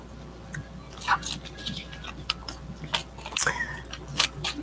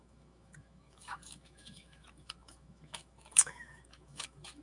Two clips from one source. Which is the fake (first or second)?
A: second